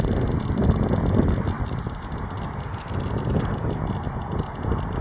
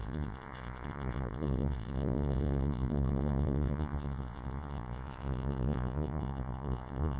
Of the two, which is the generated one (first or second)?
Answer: second